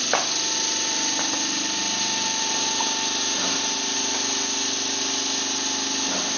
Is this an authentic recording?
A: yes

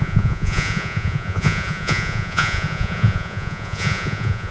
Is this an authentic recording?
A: no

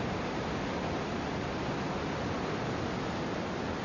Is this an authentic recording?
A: yes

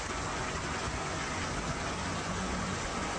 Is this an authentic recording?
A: no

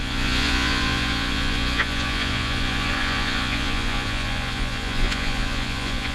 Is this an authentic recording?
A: no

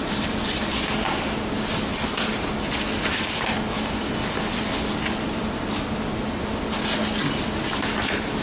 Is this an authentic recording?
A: yes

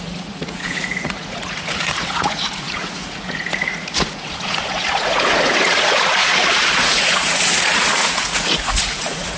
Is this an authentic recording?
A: no